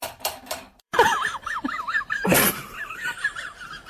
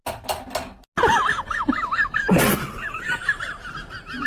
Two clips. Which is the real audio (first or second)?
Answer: second